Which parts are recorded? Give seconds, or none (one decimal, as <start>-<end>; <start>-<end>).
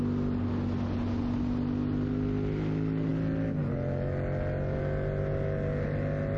0.0-6.4